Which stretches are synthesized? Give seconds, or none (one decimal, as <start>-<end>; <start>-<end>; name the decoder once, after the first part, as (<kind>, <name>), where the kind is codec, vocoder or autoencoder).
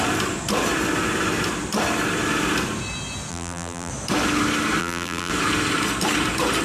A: 3.3-3.9 (vocoder, BigVGAN v2); 4.8-5.3